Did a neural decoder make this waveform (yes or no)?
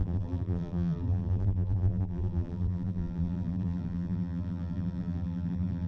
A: yes